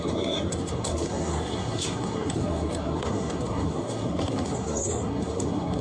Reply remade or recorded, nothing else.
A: remade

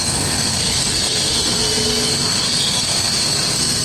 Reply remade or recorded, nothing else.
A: remade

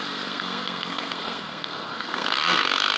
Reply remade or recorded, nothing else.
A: remade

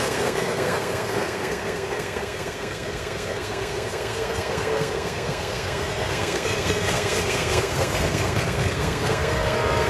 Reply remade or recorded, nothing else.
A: remade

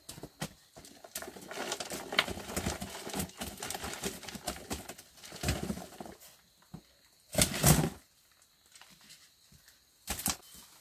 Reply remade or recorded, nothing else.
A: recorded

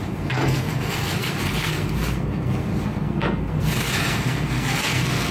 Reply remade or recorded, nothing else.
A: remade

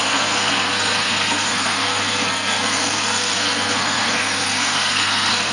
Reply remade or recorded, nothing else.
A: remade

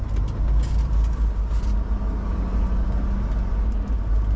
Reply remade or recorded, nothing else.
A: recorded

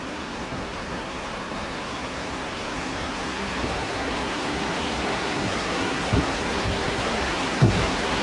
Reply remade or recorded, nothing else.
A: remade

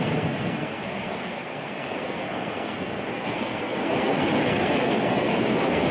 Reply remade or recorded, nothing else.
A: remade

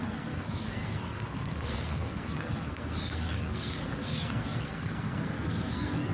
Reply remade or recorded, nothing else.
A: remade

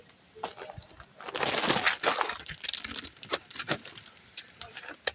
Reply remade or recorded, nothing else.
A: recorded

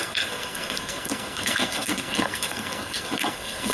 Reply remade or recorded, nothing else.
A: remade